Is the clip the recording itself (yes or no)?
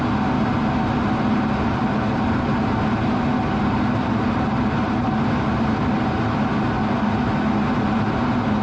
yes